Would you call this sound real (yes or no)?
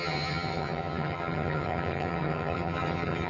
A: no